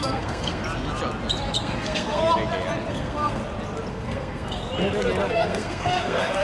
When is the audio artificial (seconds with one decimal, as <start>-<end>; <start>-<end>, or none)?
0.0-0.6; 1.6-2.2; 2.9-3.4; 3.9-4.6; 5.3-6.4